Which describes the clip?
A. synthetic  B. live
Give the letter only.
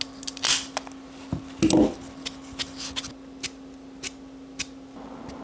B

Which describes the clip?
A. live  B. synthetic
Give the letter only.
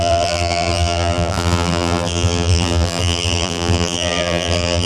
B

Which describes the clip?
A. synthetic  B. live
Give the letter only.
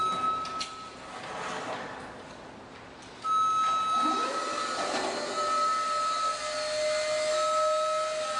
B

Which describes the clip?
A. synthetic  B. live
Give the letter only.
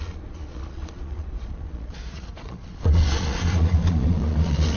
A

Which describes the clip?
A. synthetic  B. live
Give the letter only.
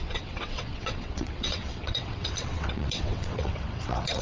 A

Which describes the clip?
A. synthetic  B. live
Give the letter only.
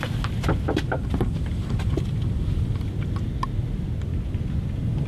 B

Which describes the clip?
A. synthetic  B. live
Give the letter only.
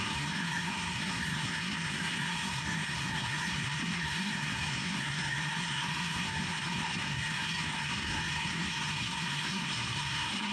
A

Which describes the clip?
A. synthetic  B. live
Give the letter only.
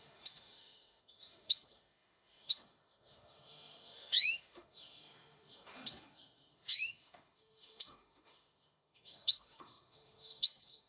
A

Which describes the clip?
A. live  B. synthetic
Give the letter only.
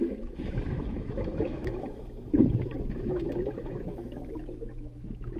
B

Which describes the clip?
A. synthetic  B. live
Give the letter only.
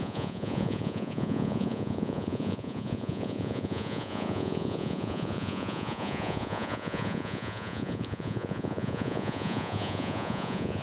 A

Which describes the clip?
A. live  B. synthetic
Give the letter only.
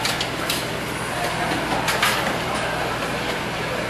A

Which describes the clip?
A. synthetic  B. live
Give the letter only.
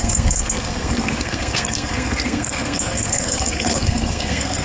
A